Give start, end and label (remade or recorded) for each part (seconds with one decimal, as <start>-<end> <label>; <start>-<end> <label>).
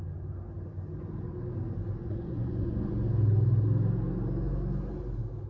0.0-2.0 recorded; 2.0-2.9 remade; 2.9-5.5 recorded